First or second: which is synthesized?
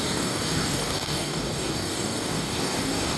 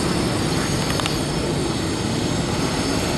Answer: first